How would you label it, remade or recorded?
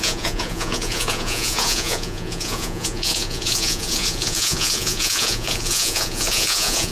remade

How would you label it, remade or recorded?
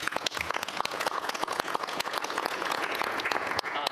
remade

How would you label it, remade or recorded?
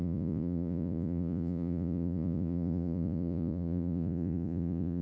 remade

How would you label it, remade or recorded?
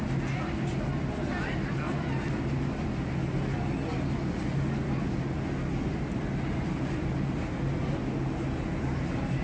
recorded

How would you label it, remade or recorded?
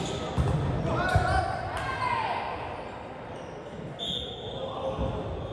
recorded